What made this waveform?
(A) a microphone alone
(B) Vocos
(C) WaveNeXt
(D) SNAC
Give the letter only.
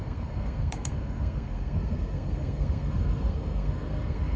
D